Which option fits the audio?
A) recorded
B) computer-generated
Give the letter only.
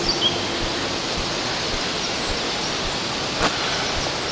A